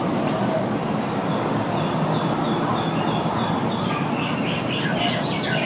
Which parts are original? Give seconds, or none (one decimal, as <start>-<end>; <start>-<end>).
0.0-5.7